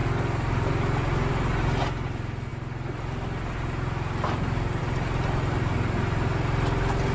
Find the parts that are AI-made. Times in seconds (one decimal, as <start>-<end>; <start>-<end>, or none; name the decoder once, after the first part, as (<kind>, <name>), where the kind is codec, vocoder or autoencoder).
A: none